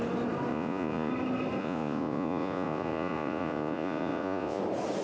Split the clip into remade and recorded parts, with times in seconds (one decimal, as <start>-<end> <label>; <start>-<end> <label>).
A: 0.0-0.5 recorded; 0.5-1.1 remade; 1.1-1.6 recorded; 1.6-4.6 remade; 4.6-5.0 recorded